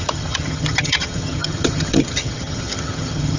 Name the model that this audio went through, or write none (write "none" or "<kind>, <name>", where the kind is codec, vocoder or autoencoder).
vocoder, HiFi-GAN